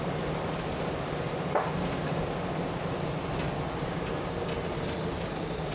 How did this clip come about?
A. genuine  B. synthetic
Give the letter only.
A